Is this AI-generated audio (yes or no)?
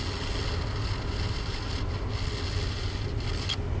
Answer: no